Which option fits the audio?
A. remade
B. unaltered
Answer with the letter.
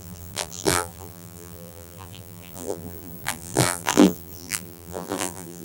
A